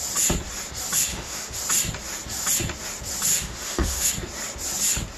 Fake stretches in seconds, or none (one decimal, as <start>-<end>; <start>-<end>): 1.1-1.6; 3.3-4.1